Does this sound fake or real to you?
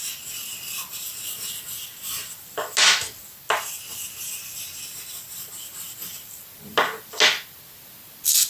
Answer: real